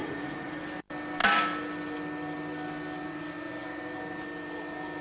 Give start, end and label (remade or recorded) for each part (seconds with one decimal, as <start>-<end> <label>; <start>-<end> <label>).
0.0-0.6 remade; 0.6-5.0 recorded